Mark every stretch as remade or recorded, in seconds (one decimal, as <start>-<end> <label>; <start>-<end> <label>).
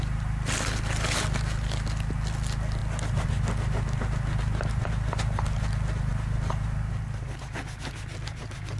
0.0-8.8 recorded